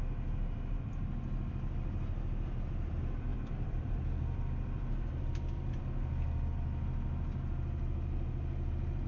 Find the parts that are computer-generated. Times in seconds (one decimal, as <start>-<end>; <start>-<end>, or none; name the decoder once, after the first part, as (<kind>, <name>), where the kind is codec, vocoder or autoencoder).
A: 3.3-5.8 (vocoder, BigVGAN v2)